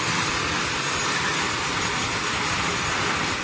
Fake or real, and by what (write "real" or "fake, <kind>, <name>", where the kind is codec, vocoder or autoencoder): real